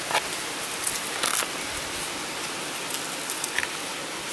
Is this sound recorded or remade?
recorded